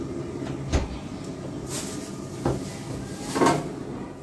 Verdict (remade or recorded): recorded